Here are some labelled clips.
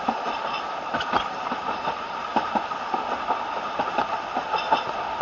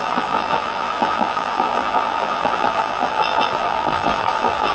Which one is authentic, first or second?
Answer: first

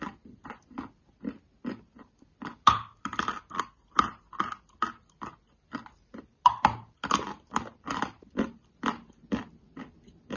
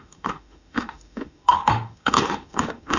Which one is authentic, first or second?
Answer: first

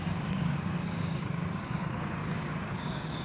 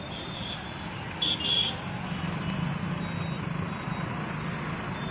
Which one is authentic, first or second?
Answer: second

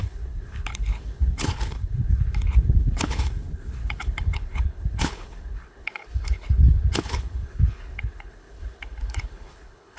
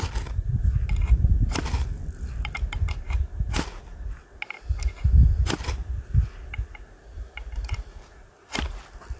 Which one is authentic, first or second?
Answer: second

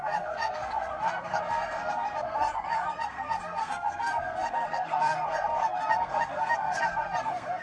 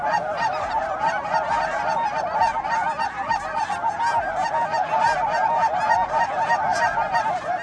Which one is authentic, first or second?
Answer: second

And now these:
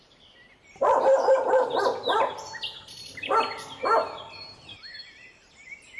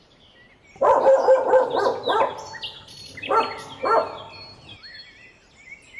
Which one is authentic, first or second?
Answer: second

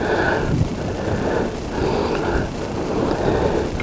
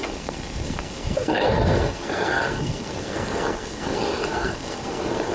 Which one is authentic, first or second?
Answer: first